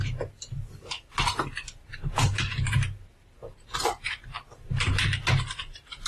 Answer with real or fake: fake